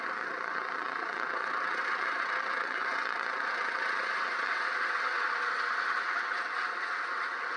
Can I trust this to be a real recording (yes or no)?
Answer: no